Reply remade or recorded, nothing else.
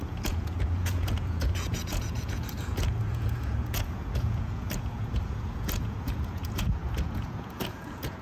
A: remade